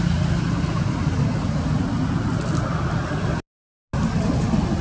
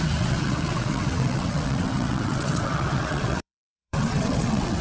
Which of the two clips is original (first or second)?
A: first